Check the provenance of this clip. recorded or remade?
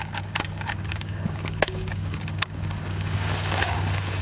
remade